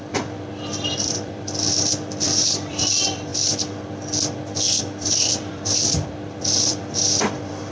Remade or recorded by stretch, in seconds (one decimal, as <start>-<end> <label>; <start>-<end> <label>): 0.0-3.3 remade; 3.3-4.8 recorded; 4.8-7.7 remade